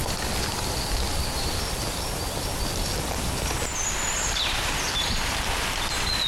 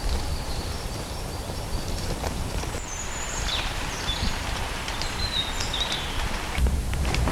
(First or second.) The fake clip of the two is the second